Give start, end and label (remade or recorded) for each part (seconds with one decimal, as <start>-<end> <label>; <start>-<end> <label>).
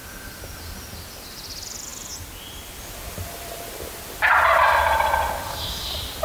0.0-6.2 recorded